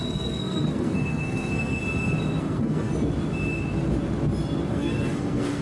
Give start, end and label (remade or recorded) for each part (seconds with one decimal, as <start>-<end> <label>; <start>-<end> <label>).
0.0-1.8 remade; 1.8-2.4 recorded; 2.4-2.9 remade; 2.9-4.7 recorded; 4.7-5.6 remade